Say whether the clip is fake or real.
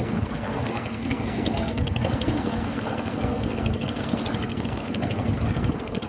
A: fake